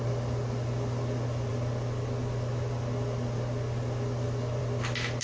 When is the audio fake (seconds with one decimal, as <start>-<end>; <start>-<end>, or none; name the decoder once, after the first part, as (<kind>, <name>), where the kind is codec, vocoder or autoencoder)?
none